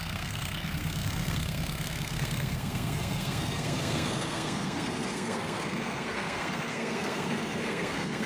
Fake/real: fake